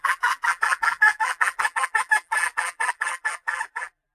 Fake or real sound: fake